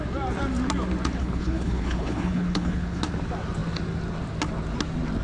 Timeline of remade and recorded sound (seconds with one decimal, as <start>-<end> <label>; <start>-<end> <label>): 0.0-1.2 recorded; 1.2-3.0 remade; 3.0-5.2 recorded